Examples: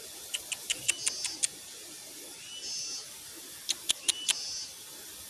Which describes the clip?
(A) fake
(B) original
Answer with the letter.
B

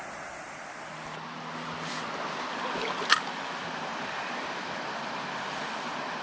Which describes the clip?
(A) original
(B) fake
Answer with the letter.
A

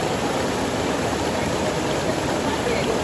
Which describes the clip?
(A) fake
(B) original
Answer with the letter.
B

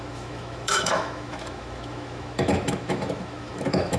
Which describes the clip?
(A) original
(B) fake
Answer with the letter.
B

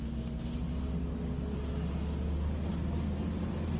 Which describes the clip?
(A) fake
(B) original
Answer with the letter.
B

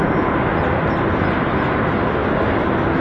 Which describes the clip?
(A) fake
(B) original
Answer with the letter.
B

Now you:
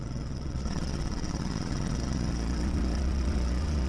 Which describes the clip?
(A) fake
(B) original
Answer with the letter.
A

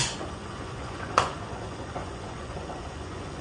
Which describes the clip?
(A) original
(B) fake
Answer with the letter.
B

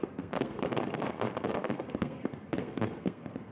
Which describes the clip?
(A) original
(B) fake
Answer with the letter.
B